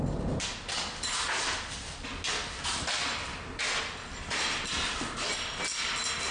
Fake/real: real